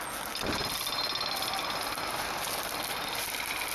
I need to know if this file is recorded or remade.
recorded